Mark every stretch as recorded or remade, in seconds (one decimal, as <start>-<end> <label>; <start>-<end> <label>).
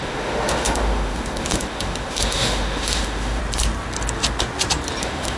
0.0-3.4 remade; 3.4-5.0 recorded; 5.0-5.4 remade